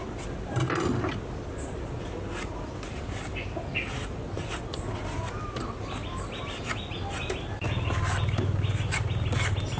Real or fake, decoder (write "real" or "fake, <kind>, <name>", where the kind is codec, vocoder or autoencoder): real